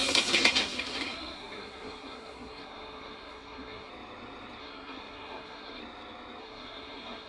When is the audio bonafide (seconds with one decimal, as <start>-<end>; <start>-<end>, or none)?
3.9-4.6; 5.8-6.4